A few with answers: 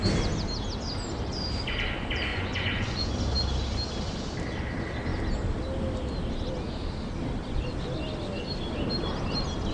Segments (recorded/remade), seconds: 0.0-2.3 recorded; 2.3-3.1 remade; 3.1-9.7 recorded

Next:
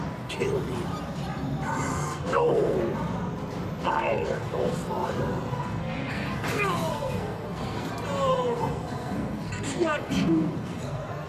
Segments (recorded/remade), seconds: 0.0-1.9 recorded; 1.9-2.8 remade; 2.8-3.8 recorded; 3.8-4.8 remade; 4.8-5.3 recorded; 5.3-7.9 remade; 7.9-8.3 recorded; 8.3-11.3 remade